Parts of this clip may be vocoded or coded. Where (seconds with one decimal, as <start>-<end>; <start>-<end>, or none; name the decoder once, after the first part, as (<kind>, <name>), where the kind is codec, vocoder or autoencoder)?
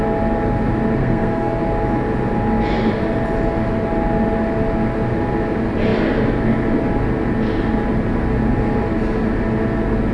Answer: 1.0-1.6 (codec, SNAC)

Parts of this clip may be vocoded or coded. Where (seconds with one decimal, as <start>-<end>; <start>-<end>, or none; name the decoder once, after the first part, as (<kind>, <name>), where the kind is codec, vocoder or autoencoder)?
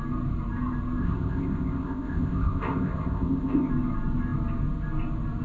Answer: 1.0-3.7 (codec, ZipCodec)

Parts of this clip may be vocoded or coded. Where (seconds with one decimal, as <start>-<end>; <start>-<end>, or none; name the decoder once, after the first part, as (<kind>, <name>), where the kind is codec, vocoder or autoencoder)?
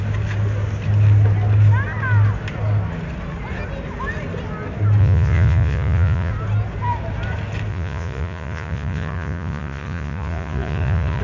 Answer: 5.0-6.3 (vocoder, Vocos); 7.7-11.2